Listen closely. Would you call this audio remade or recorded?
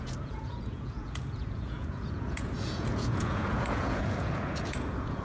remade